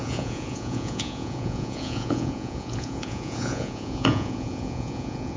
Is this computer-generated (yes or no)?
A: yes